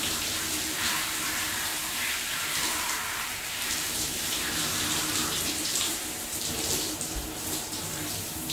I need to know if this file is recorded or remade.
remade